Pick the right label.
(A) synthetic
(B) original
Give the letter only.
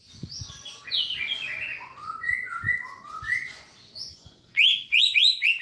A